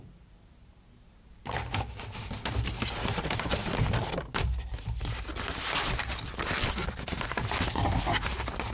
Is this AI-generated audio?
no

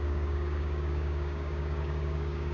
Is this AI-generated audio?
yes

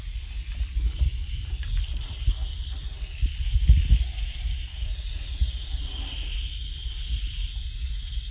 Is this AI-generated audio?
no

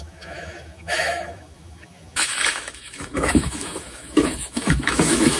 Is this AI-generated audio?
yes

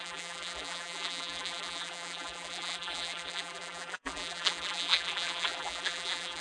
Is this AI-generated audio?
yes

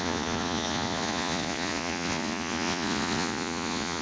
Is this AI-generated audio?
yes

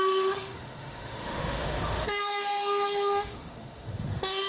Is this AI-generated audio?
yes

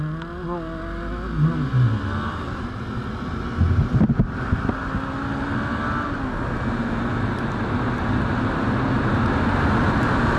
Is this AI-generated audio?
no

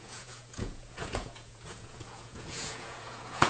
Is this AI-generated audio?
yes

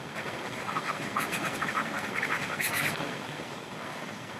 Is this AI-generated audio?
yes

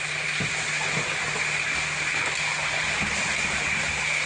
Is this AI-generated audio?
no